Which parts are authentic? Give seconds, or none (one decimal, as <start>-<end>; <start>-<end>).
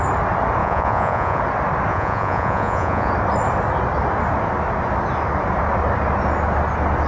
0.0-0.6; 1.4-1.9; 3.1-7.1